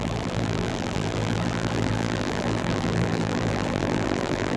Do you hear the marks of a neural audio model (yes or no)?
yes